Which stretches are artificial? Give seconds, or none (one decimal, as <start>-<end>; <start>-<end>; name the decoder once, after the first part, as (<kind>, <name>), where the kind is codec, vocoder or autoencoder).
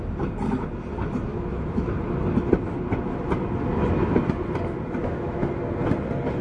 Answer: 1.3-1.9 (autoencoder, DAC-VAE); 5.0-5.5